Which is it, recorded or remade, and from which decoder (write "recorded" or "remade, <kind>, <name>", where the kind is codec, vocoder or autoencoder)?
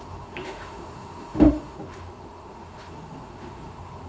remade, autoencoder, DAC-VAE